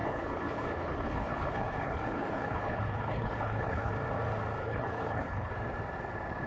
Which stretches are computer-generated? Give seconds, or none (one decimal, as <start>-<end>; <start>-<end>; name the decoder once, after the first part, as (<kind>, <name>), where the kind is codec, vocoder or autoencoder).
0.0-3.9 (codec, HILCodec); 4.6-5.5